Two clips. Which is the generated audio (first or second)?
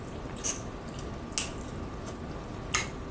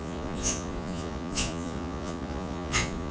second